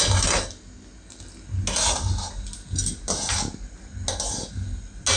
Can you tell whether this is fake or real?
real